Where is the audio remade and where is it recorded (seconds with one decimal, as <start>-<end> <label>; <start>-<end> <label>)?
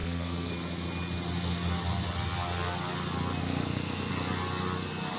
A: 0.0-0.5 remade; 0.5-3.4 recorded; 3.4-4.1 remade; 4.1-5.2 recorded